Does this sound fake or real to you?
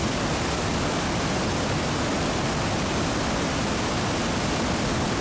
real